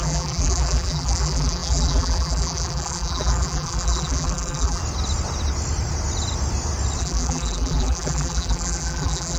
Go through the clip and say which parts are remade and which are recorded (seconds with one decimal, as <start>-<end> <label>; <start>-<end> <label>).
0.0-4.8 remade; 4.8-7.0 recorded; 7.0-9.4 remade